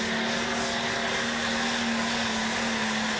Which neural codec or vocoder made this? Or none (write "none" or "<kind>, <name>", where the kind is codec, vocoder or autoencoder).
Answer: none